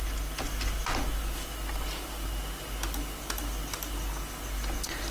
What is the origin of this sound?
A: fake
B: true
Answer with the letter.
B